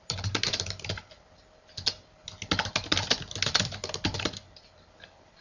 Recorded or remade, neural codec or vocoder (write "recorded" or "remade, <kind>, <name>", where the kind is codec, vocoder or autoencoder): recorded